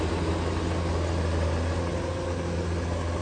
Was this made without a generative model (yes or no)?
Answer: yes